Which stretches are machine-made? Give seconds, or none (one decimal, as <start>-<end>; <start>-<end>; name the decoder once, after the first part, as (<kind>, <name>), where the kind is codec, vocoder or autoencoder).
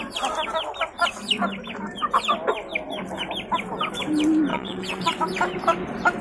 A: 4.5-5.2 (vocoder, WaveNeXt)